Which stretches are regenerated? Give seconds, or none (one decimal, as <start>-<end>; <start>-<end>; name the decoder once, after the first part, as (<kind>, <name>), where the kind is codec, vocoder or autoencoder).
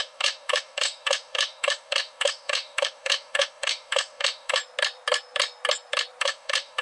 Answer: 0.0-4.6 (autoencoder, DAC-VAE); 6.2-6.8